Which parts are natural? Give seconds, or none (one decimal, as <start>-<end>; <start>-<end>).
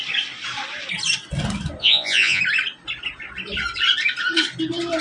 0.0-1.8; 2.4-5.0